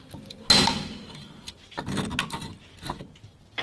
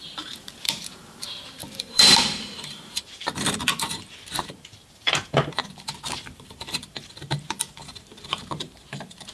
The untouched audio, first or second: first